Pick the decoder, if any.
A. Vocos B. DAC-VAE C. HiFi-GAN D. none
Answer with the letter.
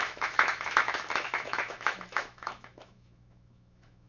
B